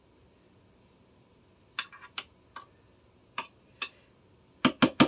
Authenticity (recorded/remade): recorded